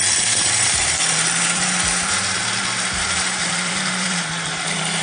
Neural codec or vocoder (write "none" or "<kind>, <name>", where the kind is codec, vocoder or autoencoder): vocoder, BigVGAN v2